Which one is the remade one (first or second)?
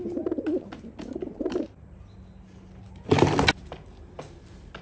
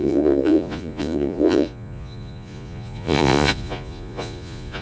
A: second